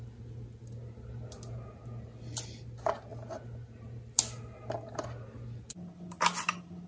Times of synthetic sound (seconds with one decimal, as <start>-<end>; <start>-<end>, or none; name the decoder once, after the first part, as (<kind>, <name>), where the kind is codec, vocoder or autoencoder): none